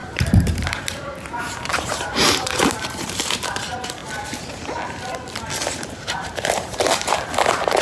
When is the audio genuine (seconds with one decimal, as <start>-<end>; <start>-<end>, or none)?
4.0-5.9